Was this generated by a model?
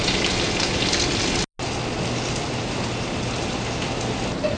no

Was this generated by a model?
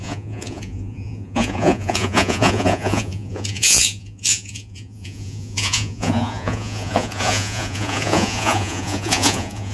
yes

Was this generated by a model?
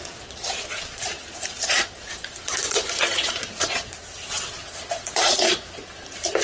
yes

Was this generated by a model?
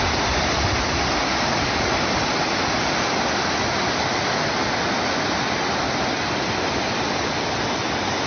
no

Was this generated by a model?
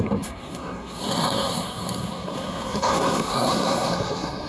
yes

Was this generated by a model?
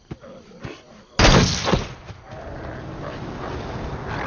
no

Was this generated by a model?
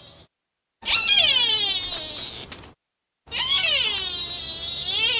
no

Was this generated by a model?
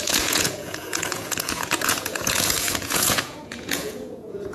yes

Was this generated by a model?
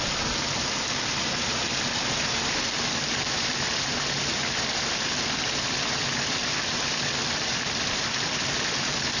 no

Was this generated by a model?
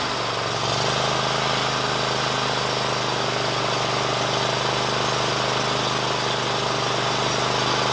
no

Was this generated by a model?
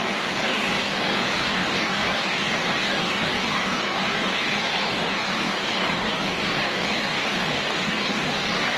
yes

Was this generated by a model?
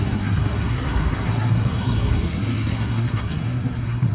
yes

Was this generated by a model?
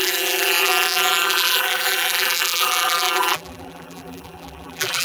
yes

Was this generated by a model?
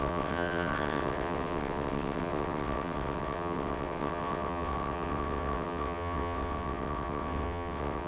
yes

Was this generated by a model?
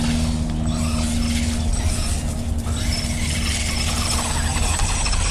no